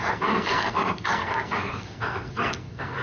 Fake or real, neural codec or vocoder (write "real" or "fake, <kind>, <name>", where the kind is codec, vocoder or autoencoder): fake, codec, SNAC